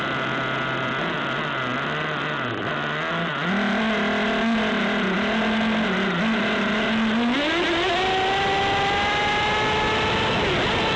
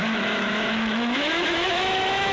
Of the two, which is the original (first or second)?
first